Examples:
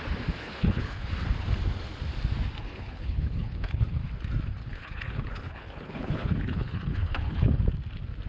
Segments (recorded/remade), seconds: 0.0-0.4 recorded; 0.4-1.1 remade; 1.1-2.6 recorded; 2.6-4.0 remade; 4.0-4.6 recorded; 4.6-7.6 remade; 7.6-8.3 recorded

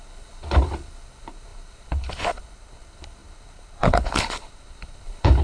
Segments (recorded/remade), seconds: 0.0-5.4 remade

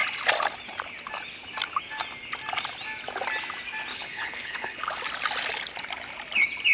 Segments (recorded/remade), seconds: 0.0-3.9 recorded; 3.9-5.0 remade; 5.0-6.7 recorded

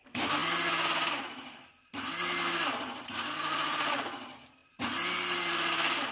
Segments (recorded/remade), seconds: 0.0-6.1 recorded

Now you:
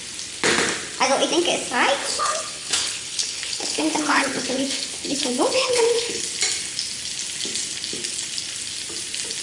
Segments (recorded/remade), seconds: 0.0-2.0 recorded; 2.0-6.2 remade; 6.2-9.4 recorded